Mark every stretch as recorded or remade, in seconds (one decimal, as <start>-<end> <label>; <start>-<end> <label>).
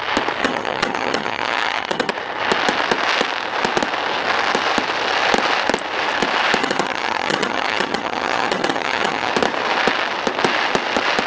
0.0-0.4 recorded; 0.4-2.1 remade; 2.1-6.6 recorded; 6.6-9.3 remade; 9.3-11.3 recorded